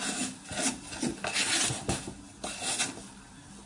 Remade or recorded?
recorded